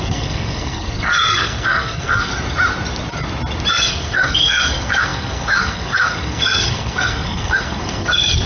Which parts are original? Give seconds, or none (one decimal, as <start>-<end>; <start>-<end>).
2.3-3.7

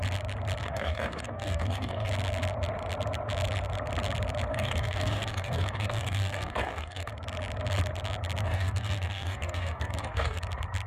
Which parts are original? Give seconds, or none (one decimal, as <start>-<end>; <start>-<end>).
0.0-0.6; 2.1-4.5; 7.1-8.4; 10.4-10.9

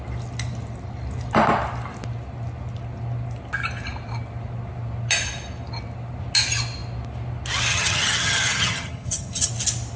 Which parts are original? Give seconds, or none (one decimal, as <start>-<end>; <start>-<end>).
0.0-7.7; 9.5-10.0

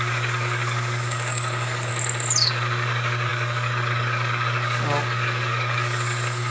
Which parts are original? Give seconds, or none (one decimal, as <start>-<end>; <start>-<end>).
1.9-2.5